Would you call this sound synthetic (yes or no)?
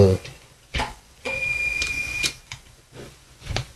yes